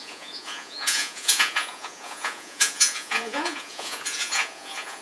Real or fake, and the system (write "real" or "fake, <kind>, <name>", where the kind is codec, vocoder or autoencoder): fake, vocoder, Vocos